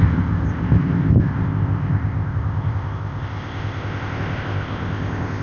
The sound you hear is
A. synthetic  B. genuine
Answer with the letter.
A